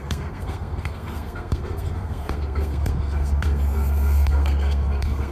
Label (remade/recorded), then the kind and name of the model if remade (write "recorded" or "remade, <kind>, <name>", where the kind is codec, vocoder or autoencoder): remade, codec, SNAC